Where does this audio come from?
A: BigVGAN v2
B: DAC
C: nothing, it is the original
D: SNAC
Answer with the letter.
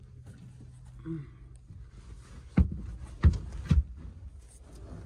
C